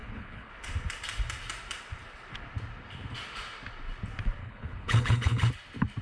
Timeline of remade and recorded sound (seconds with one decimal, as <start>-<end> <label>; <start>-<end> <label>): 0.0-0.5 remade; 0.5-4.4 recorded; 4.4-5.5 remade; 5.5-6.0 recorded